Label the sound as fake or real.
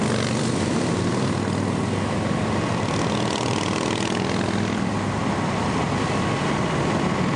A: real